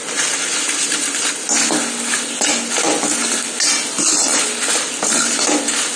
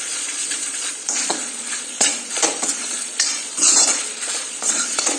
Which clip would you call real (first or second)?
first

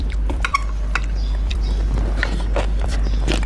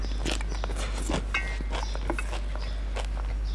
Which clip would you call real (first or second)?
second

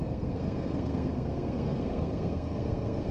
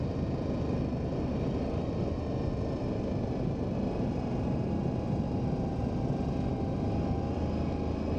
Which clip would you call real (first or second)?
second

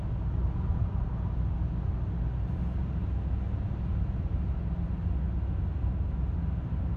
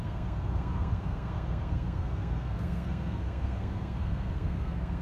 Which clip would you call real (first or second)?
first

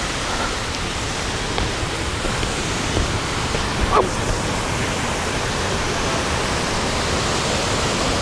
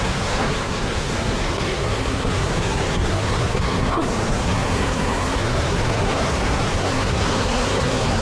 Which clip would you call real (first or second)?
first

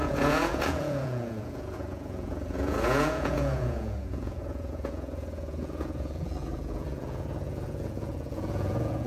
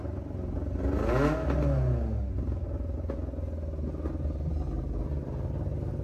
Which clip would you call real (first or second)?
second